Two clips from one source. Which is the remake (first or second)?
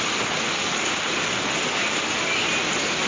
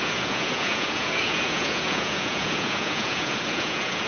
second